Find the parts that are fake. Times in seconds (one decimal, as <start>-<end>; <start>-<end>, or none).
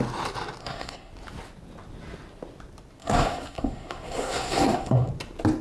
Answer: 0.6-1.1; 3.0-5.1